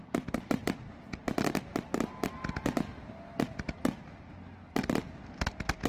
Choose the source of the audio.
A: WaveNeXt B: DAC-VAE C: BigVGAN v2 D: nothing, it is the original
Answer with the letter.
D